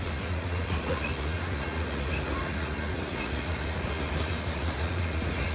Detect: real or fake fake